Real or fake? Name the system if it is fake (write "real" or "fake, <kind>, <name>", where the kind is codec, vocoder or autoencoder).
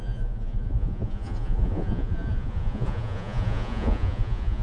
fake, vocoder, Vocos